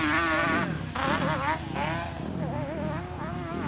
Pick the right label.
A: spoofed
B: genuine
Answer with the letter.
B